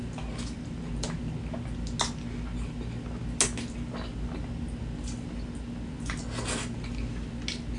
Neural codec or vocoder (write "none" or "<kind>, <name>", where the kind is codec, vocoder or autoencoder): none